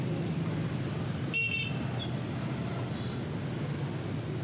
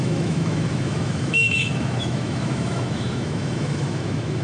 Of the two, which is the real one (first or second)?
first